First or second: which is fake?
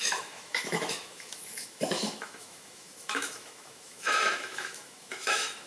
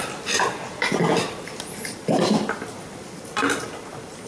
first